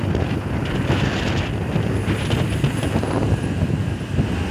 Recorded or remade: recorded